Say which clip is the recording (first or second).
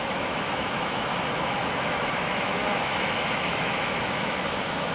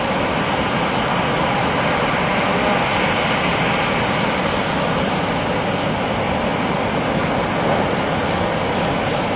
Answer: second